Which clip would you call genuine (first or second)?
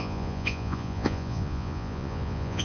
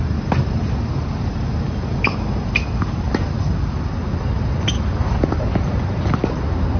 second